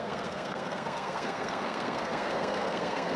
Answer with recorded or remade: remade